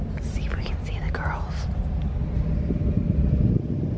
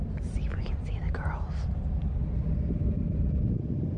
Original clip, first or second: first